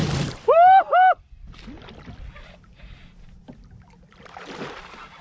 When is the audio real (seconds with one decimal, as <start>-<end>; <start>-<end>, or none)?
0.0-5.2